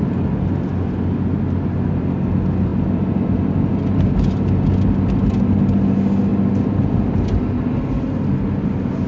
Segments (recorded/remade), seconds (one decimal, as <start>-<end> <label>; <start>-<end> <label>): 0.0-9.1 recorded